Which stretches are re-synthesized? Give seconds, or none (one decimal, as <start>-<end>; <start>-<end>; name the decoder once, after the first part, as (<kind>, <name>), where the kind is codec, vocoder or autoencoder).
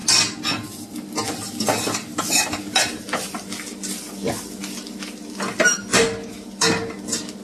none